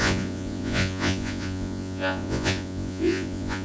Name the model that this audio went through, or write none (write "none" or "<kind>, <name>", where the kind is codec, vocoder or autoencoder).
vocoder, Vocos